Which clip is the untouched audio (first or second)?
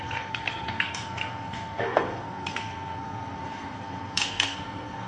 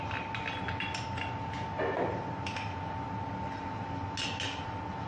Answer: second